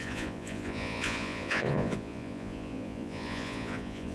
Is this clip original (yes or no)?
no